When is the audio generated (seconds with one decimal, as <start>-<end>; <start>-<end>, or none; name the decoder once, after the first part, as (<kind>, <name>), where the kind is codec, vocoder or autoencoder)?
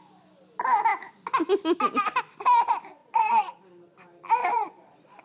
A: 3.0-3.6 (vocoder, Vocos); 4.4-5.2